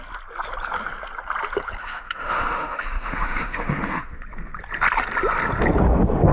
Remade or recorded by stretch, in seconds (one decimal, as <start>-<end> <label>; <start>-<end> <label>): 0.0-1.8 recorded; 1.8-4.2 remade; 4.2-6.3 recorded